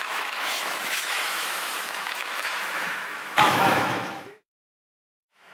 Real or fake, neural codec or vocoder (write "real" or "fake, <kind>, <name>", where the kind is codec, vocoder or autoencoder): fake, autoencoder, DAC-VAE